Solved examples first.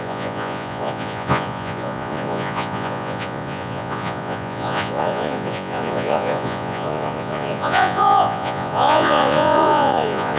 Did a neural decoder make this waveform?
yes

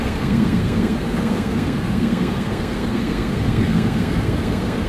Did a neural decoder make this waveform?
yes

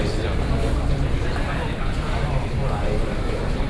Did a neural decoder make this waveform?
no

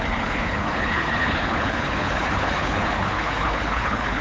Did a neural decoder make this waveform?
yes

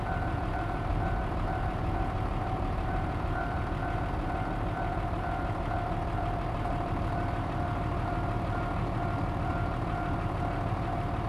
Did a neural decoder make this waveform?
yes